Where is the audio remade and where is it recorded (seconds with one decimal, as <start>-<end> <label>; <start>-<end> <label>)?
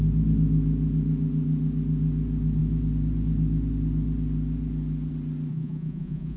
0.0-5.5 recorded; 5.5-6.4 remade